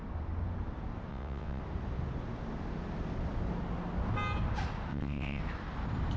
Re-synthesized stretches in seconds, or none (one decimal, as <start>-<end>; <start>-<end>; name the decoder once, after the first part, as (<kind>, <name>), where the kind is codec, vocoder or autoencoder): 1.1-1.6 (vocoder, WaveNeXt); 4.9-5.4